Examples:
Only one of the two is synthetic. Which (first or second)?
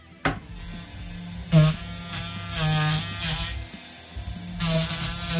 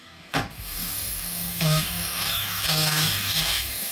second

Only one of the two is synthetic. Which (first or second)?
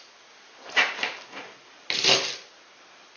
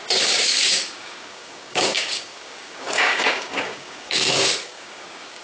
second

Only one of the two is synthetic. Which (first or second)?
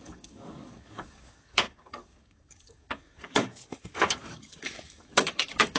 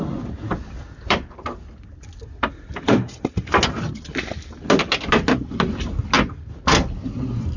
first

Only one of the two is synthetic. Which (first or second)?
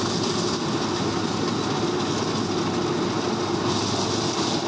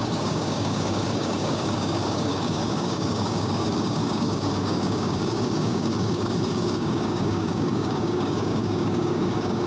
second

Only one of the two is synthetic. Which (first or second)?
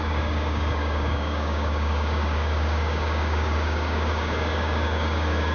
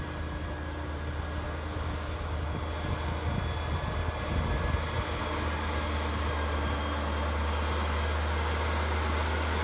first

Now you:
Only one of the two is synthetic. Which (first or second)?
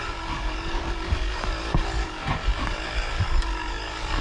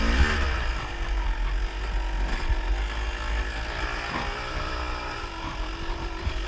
first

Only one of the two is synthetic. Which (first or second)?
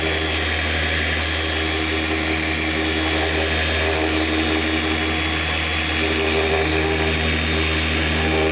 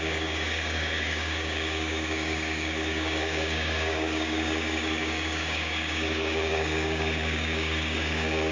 second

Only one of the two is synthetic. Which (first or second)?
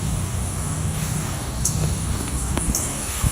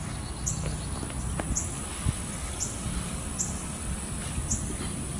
first